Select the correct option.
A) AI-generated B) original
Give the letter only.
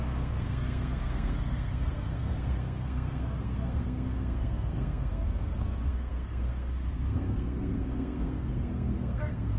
A